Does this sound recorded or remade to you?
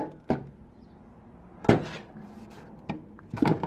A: recorded